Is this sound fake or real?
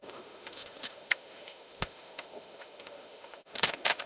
fake